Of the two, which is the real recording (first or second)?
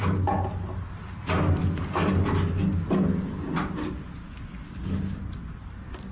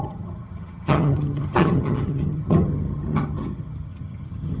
first